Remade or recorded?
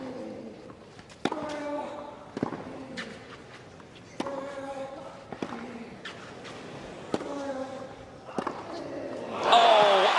recorded